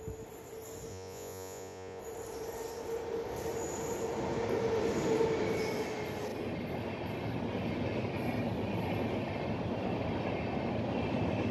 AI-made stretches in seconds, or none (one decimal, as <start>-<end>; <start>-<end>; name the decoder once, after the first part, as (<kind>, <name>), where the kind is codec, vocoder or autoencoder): 0.9-2.0 (vocoder, Vocos)